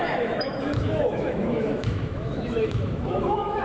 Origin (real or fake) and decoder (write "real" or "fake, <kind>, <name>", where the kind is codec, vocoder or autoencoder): fake, autoencoder, DAC-VAE